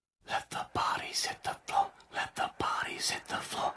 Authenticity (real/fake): real